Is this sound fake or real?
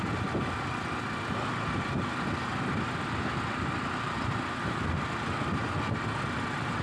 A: real